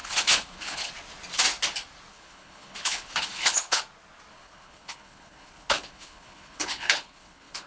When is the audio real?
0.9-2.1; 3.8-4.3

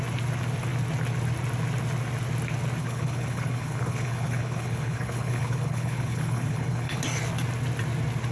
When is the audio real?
0.0-2.8; 7.0-8.3